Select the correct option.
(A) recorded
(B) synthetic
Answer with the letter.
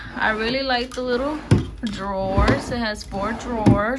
A